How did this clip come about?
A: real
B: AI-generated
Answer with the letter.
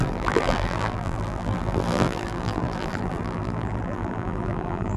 B